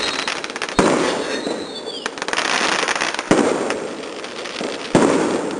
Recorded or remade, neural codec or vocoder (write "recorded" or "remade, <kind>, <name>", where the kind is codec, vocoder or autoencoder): recorded